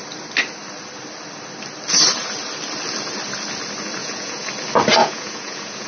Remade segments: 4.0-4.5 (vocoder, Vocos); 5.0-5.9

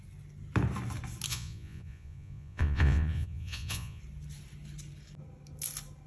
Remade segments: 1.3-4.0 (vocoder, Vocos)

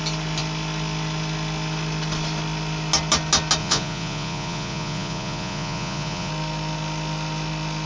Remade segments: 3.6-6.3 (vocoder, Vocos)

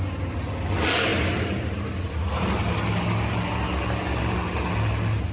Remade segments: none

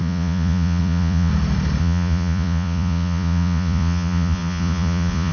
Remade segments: 0.0-1.3 (vocoder, Vocos); 1.8-5.3

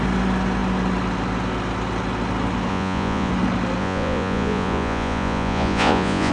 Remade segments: 2.7-3.3 (vocoder, Vocos); 3.8-6.3

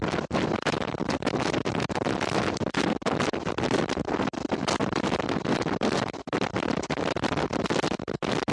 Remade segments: none